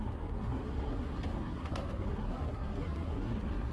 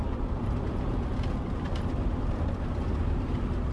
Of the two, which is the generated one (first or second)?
first